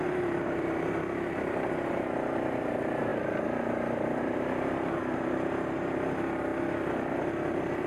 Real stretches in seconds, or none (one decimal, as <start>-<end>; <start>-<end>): 6.5-7.5